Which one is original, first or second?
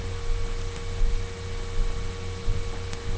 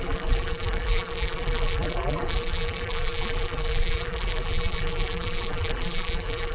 first